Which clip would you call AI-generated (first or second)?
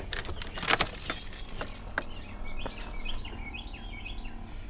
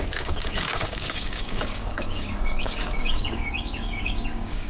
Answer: second